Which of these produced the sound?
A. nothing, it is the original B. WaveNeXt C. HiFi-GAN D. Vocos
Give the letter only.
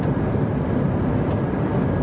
A